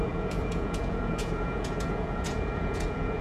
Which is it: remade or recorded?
remade